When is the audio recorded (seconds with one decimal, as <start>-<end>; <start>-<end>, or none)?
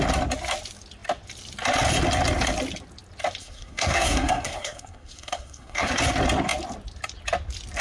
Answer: 0.0-3.4; 5.9-7.8